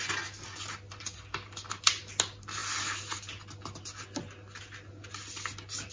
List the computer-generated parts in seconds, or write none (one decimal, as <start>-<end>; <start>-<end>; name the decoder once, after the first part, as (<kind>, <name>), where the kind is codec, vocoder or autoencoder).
none